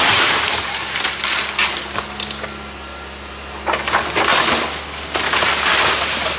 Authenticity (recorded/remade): recorded